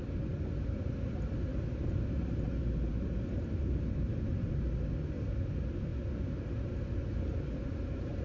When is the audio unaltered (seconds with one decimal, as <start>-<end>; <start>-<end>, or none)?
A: 0.0-1.5; 4.6-8.2